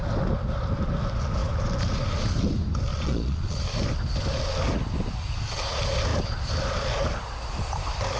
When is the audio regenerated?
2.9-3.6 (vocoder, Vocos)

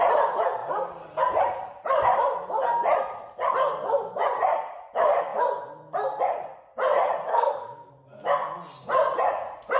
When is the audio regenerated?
7.3-7.9 (codec, SNAC)